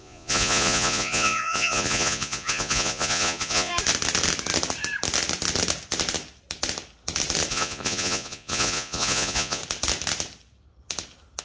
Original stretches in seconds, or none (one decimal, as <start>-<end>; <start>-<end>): 3.7-7.5; 9.6-11.4